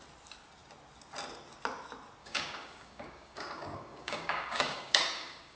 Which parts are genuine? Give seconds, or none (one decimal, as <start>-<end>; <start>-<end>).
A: 0.0-2.2